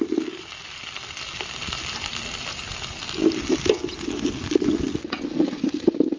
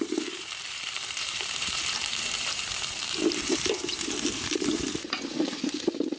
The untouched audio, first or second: first